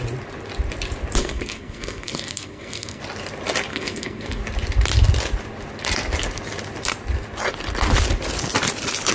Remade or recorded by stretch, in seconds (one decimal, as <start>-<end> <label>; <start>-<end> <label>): 0.0-1.2 recorded; 1.2-3.0 remade; 3.0-3.7 recorded; 3.7-4.4 remade; 4.4-9.1 recorded